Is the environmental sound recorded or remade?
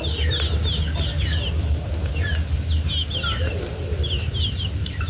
recorded